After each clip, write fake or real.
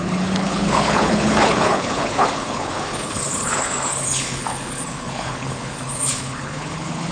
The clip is fake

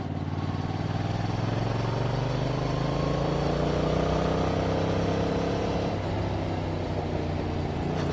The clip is real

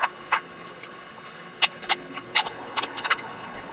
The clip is fake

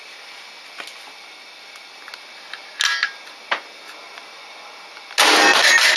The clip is real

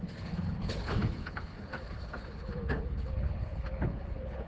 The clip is fake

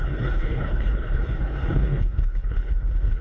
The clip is fake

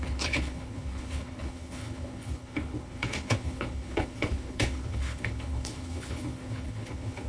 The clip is fake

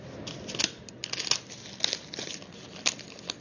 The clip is real